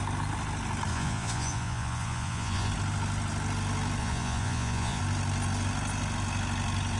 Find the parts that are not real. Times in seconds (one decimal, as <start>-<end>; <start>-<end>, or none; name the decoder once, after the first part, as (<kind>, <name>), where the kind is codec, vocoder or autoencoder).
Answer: 0.9-2.7 (vocoder, Vocos); 4.0-5.0